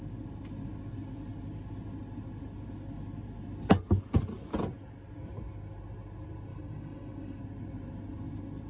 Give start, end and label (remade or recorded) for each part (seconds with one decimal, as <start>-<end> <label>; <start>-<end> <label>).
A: 0.0-6.5 recorded; 6.5-7.4 remade; 7.4-8.7 recorded